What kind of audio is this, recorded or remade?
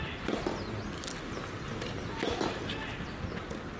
recorded